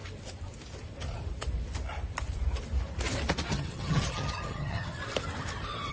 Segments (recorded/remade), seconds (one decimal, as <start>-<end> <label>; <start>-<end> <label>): 0.0-3.5 recorded; 3.5-5.0 remade; 5.0-5.9 recorded